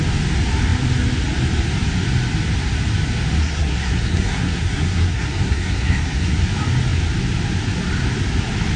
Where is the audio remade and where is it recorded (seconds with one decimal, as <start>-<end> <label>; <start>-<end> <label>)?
0.0-3.4 recorded; 3.4-6.5 remade; 6.5-8.8 recorded